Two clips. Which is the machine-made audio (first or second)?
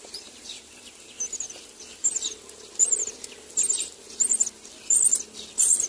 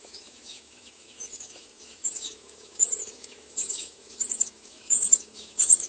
second